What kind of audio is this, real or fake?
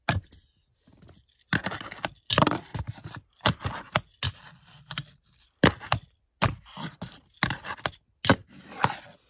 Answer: real